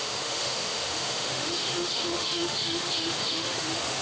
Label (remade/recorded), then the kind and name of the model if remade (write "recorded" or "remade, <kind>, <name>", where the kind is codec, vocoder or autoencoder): remade, autoencoder, DAC-VAE